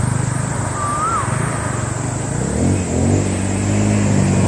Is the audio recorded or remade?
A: recorded